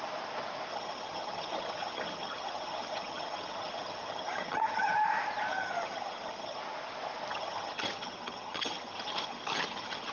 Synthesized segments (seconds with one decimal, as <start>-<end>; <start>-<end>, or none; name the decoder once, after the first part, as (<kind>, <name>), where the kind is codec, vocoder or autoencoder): 0.7-4.9 (vocoder, HiFi-GAN); 5.5-6.6; 7.3-10.1